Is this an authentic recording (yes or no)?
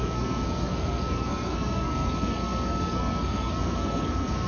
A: no